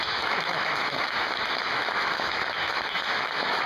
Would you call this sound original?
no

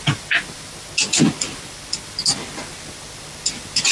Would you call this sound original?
yes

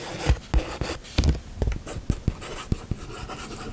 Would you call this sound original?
yes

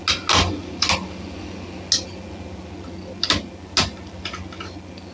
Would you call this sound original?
yes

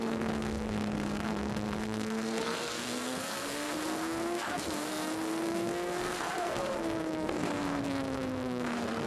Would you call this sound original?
no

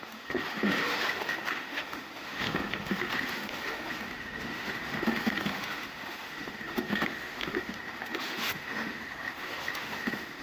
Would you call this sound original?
no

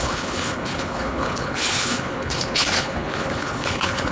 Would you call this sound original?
no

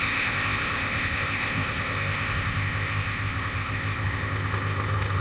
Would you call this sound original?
no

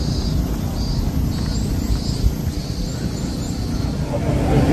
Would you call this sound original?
yes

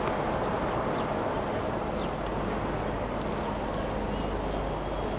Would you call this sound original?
yes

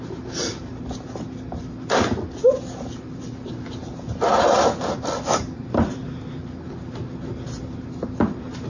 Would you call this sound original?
yes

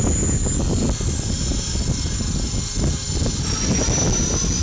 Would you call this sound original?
yes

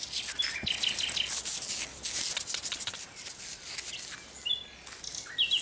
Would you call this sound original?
yes